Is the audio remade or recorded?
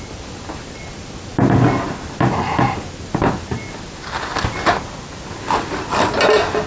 recorded